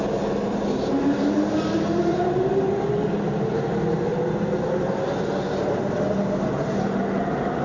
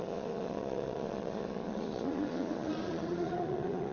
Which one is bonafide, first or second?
first